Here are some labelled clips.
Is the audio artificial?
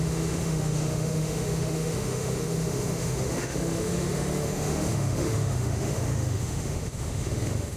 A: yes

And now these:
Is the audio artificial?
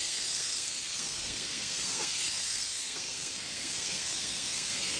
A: yes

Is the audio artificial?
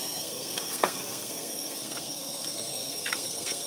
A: yes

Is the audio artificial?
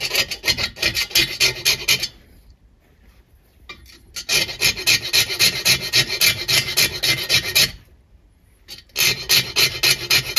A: no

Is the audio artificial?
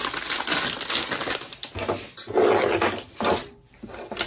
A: no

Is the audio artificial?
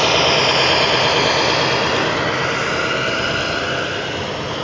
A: no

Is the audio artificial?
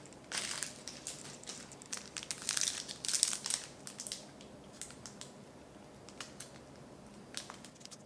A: no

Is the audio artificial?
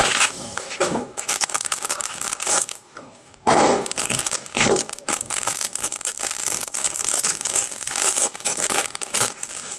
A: yes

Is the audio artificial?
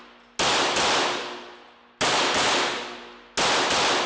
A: no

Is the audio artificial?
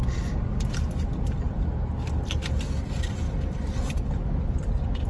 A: no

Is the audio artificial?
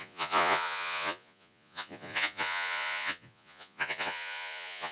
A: yes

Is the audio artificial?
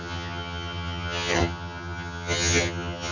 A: yes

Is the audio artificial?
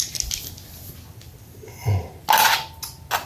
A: no